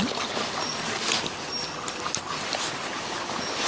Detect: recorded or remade recorded